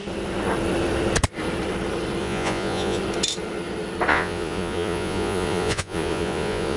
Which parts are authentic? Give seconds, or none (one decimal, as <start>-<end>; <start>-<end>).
0.0-2.2; 3.0-4.1